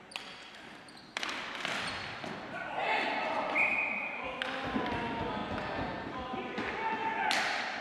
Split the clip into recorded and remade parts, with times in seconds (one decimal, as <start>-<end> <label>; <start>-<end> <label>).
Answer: 0.0-5.4 recorded; 5.4-6.1 remade; 6.1-7.8 recorded